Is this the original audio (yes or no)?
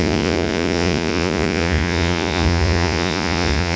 no